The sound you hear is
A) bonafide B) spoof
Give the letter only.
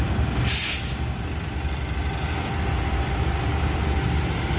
A